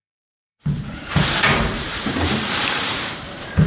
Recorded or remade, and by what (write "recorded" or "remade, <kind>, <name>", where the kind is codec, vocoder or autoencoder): remade, vocoder, BigVGAN v2